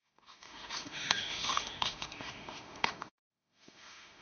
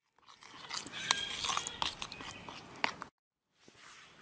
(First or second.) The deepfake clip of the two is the first